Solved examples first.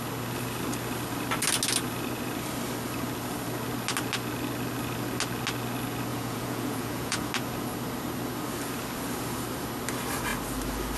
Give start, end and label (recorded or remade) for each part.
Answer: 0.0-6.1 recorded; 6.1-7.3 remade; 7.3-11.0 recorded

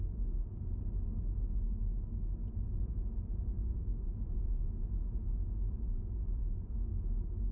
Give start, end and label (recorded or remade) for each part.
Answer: 0.0-2.4 recorded; 2.4-6.9 remade; 6.9-7.5 recorded